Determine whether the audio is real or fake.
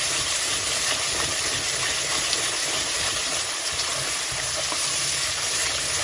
fake